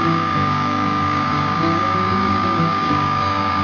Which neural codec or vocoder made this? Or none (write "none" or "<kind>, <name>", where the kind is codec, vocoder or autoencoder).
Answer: codec, DAC